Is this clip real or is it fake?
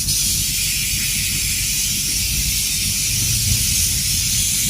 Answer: real